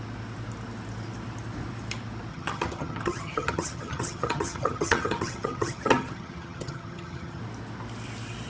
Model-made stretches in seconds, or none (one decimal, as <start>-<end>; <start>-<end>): 2.3-7.4